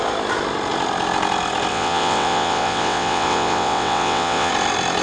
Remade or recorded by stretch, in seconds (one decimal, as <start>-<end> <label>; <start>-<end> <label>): 0.0-1.7 recorded; 1.7-4.5 remade; 4.5-5.0 recorded